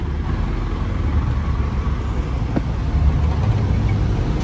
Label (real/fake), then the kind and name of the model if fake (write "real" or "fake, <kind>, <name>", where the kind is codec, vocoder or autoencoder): real